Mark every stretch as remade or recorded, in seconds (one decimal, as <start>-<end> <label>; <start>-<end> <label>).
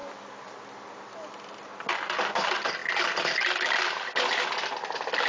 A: 0.0-5.3 recorded